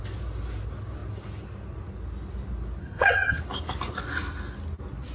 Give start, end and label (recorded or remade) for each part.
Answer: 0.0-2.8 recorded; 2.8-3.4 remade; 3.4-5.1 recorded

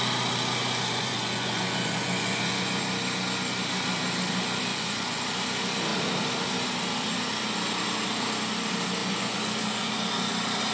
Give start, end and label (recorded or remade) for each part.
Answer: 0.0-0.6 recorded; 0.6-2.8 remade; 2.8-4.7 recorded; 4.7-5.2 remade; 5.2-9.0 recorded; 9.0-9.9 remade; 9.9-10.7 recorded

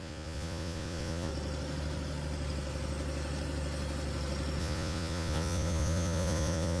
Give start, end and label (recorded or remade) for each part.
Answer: 0.0-1.3 remade; 1.3-4.6 recorded; 4.6-6.8 remade

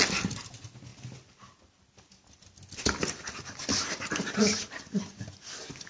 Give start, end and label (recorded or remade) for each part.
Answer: 0.0-5.9 recorded

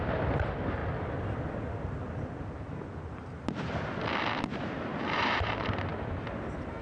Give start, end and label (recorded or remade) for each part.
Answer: 0.0-0.8 remade; 0.8-4.6 recorded; 4.6-5.9 remade; 5.9-6.8 recorded

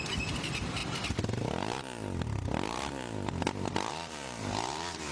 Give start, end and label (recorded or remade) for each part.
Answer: 0.0-5.1 recorded

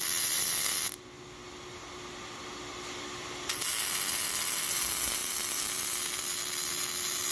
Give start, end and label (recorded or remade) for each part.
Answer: 0.0-3.7 recorded; 3.7-4.6 remade; 4.6-5.2 recorded; 5.2-6.2 remade; 6.2-7.3 recorded

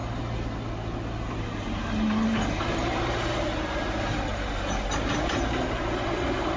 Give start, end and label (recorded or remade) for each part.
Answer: 0.0-1.3 recorded; 1.3-6.6 remade